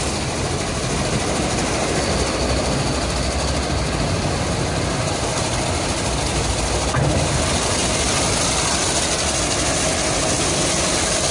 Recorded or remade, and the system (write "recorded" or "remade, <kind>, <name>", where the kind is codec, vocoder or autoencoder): recorded